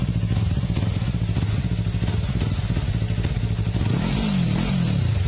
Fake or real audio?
real